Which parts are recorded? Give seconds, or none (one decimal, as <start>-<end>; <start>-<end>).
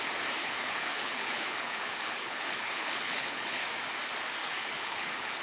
0.0-0.4; 3.6-4.4